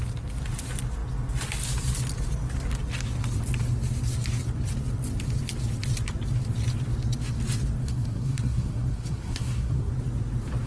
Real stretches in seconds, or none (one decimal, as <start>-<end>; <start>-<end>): 0.0-7.8; 9.9-10.7